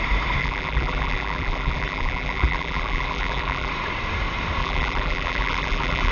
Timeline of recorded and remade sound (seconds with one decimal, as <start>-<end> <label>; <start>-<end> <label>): 0.0-0.4 recorded; 0.4-3.7 remade; 3.7-4.6 recorded; 4.6-6.1 remade